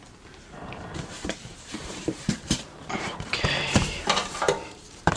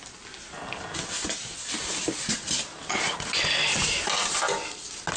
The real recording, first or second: second